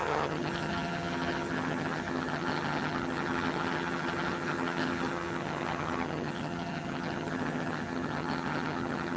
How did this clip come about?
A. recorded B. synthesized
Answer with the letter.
B